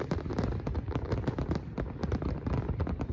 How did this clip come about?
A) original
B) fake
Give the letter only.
A